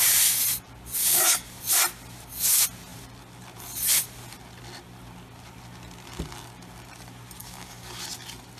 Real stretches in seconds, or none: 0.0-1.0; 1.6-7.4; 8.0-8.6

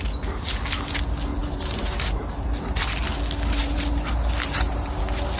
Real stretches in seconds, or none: 0.0-1.4; 3.1-3.6; 5.0-5.4

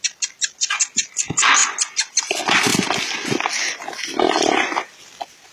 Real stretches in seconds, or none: 0.0-5.5

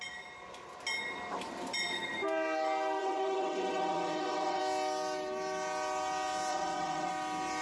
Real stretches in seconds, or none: 0.0-3.0; 4.6-6.5; 7.1-7.6